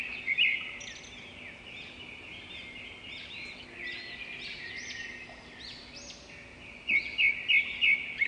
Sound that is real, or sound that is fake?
real